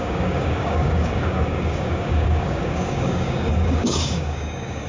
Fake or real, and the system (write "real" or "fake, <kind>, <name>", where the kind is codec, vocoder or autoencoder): fake, codec, DAC